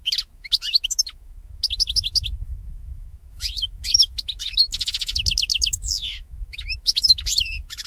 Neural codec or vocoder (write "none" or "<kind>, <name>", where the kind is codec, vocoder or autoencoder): autoencoder, DAC-VAE